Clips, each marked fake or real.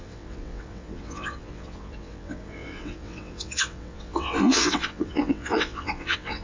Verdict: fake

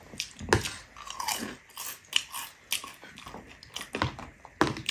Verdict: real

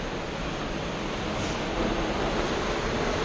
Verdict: real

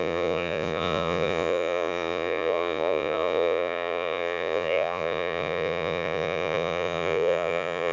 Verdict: fake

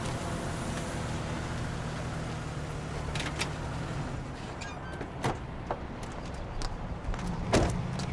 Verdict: real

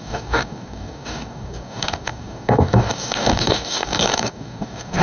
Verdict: fake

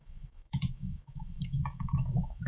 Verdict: fake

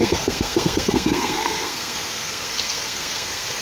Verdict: fake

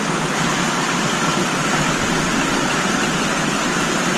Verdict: real